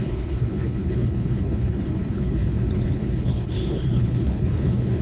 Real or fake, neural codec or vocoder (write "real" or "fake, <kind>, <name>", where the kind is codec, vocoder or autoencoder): fake, codec, HILCodec